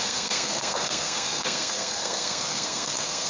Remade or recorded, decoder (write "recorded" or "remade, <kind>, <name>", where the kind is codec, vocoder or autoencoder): remade, codec, SNAC